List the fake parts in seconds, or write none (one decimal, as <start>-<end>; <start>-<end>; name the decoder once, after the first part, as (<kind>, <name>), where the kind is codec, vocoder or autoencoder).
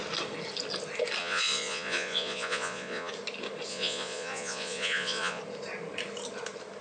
1.2-3.1 (vocoder, Vocos); 3.7-5.4